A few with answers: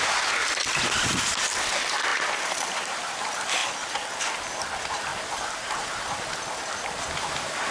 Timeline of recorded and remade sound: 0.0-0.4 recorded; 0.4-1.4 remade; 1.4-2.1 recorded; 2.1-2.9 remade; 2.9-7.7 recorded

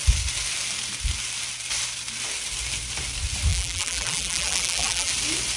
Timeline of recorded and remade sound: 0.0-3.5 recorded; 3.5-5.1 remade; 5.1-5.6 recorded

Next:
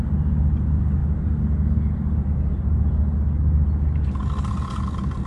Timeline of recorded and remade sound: 0.0-5.3 recorded

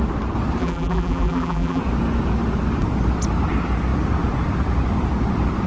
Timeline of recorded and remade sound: 0.0-0.6 recorded; 0.6-1.8 remade; 1.8-5.7 recorded

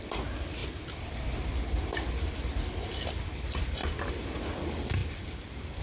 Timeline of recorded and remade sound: 0.0-0.6 remade; 0.6-3.2 recorded; 3.2-3.8 remade; 3.8-4.5 recorded; 4.5-5.8 remade

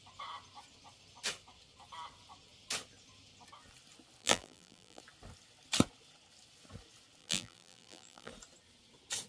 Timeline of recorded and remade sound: 0.0-4.2 recorded; 4.2-5.0 remade; 5.0-7.2 recorded; 7.2-8.3 remade; 8.3-9.3 recorded

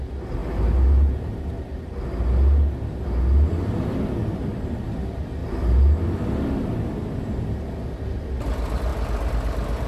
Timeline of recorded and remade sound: 0.0-0.4 recorded; 0.4-1.5 remade; 1.5-9.9 recorded